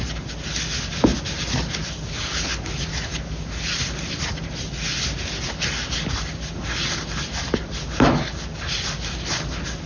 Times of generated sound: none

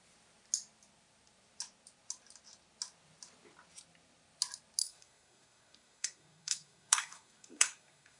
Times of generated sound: 4.8-8.2 (codec, SNAC)

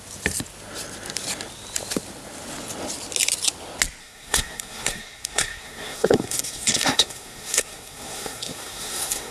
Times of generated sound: 4.0-9.3 (codec, SNAC)

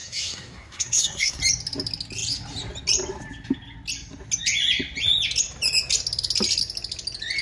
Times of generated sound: 0.0-1.4 (codec, SNAC)

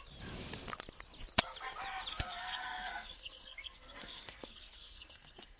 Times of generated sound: 2.1-5.6 (codec, SNAC)